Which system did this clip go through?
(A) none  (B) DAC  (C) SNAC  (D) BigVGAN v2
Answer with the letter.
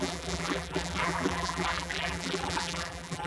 D